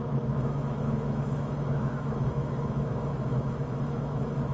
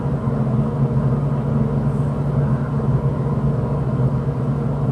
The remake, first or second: first